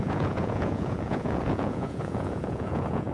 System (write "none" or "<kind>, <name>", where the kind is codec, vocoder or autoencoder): vocoder, Vocos